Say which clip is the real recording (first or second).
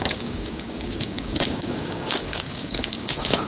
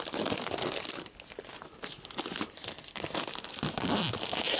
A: second